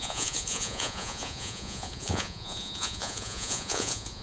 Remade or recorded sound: remade